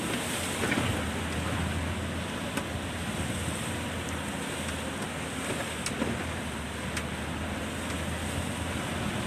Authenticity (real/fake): real